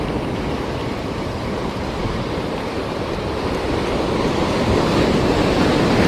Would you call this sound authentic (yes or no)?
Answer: yes